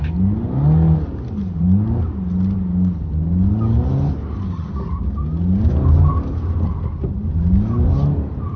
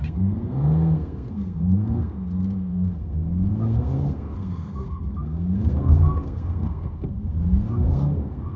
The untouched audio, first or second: first